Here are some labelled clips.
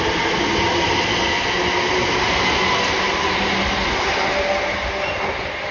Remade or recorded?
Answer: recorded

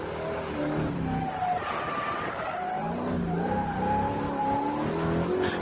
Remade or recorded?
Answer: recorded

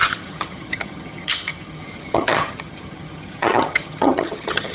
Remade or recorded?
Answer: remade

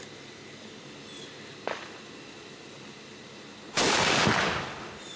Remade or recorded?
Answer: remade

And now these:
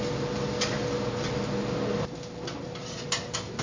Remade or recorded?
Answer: recorded